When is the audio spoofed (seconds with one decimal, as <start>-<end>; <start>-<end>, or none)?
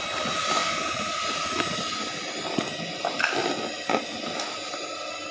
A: none